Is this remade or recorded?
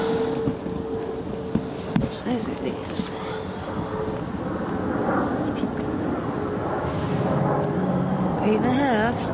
recorded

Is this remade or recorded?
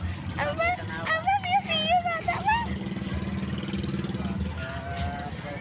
recorded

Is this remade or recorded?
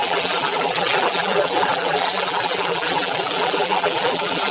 remade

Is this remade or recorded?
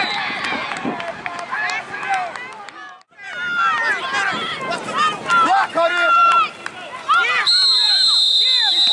recorded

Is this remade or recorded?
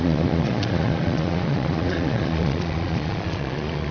remade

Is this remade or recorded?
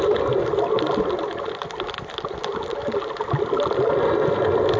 recorded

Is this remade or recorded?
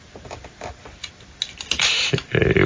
recorded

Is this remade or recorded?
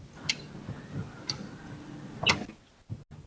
recorded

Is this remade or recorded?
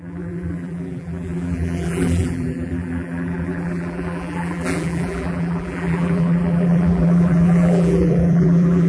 remade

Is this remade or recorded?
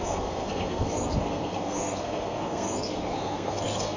remade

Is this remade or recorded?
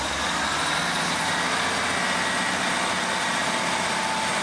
recorded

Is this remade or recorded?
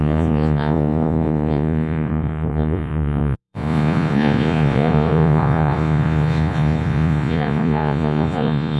remade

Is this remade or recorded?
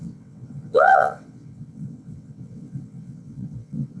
remade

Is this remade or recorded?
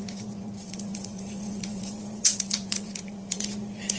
remade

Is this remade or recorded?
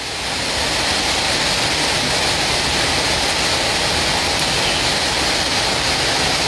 recorded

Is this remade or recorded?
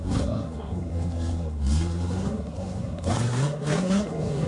remade